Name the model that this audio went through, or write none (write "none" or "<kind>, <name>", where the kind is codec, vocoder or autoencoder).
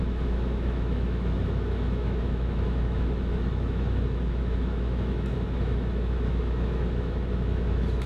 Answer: autoencoder, DAC-VAE